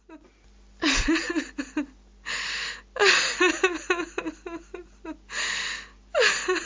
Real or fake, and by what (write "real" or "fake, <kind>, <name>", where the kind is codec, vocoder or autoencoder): real